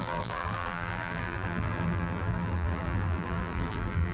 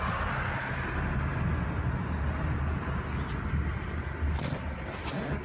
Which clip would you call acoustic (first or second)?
second